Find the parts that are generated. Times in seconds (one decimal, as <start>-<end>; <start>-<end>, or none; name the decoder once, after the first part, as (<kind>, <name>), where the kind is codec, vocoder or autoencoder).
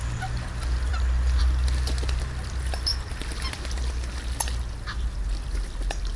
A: none